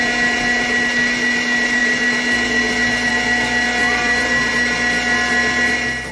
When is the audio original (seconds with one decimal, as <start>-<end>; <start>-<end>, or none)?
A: 0.0-3.8; 4.5-6.1